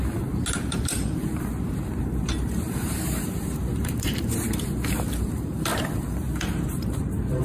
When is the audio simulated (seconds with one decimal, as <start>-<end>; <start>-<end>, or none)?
0.7-7.4